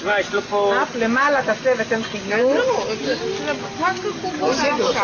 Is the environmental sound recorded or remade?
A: recorded